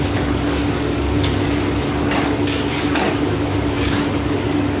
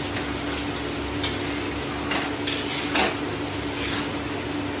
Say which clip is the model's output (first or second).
first